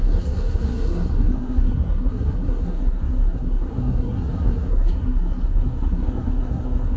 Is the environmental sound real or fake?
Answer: fake